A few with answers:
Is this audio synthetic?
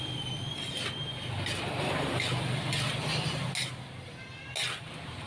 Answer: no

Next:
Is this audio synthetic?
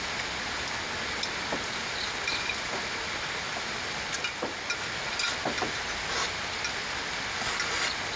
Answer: no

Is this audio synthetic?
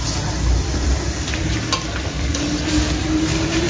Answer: yes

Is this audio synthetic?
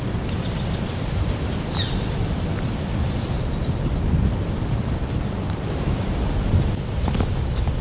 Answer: no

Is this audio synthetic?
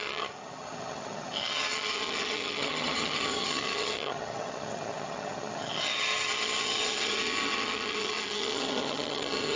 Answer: yes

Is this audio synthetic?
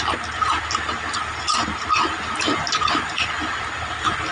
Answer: no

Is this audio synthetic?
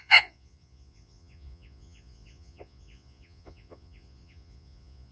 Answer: yes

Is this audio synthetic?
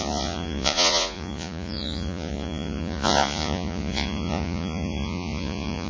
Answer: yes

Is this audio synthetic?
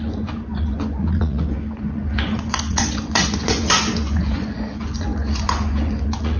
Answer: yes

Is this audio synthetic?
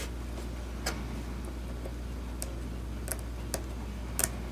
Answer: no